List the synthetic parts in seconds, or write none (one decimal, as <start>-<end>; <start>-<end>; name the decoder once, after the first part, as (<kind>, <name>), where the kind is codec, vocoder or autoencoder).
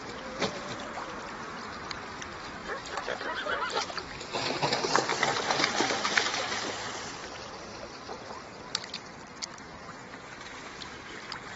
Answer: 5.1-5.9 (vocoder, BigVGAN v2)